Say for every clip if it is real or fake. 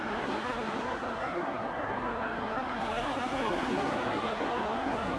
fake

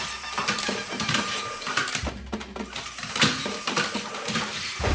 fake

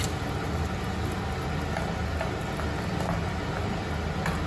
real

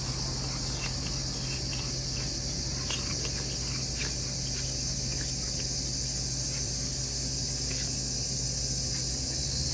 real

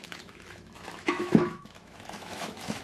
fake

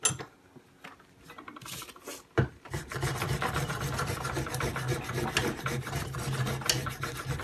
real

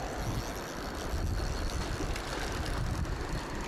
real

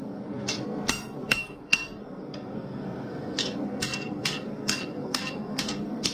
fake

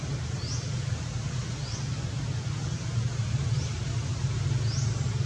real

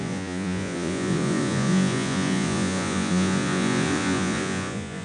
fake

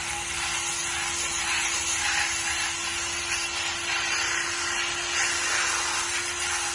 real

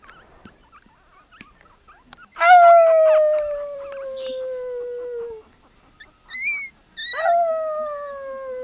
real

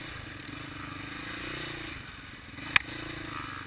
real